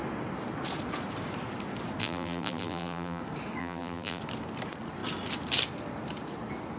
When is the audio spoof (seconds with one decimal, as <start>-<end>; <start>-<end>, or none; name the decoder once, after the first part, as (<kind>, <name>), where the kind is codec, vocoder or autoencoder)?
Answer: 2.0-3.2 (vocoder, BigVGAN v2); 3.6-4.2